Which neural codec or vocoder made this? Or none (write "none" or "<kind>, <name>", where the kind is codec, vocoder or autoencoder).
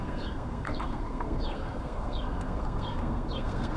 codec, SNAC